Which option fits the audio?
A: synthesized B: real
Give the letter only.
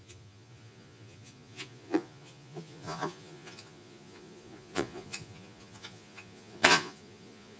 A